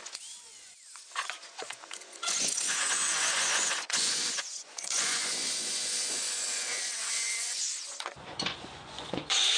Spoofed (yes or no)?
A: yes